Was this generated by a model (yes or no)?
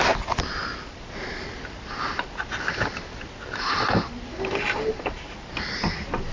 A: no